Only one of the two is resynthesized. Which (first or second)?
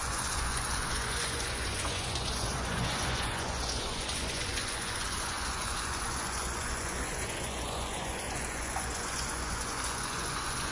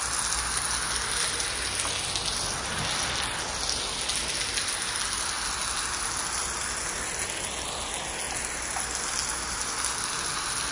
first